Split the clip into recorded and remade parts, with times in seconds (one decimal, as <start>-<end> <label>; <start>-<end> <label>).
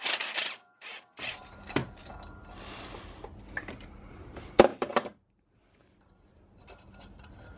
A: 0.0-1.8 remade; 1.8-4.1 recorded; 4.1-7.6 remade